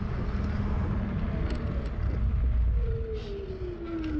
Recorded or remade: recorded